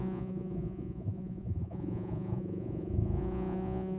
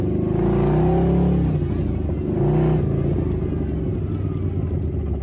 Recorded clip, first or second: second